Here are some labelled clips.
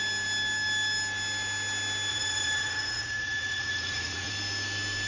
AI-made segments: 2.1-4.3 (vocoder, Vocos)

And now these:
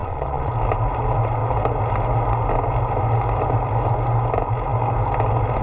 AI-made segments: 0.0-0.5 (vocoder, Vocos)

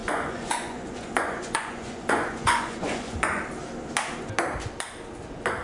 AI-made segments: 0.0-3.4 (vocoder, Vocos)

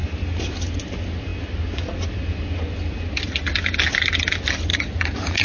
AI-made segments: 4.7-5.4 (vocoder, Vocos)

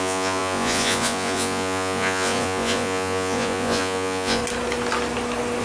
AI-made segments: 0.0-4.4 (vocoder, Vocos)

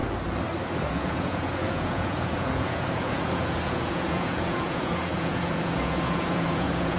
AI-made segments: 0.9-7.0 (vocoder, Vocos)

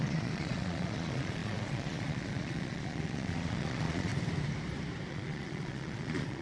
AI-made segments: 0.0-4.1 (vocoder, Vocos); 5.1-6.4